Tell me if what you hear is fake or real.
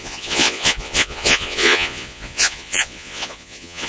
fake